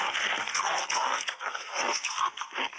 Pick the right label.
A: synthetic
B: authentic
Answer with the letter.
A